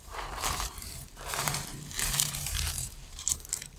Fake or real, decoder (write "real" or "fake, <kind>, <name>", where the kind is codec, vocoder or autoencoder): fake, vocoder, BigVGAN v2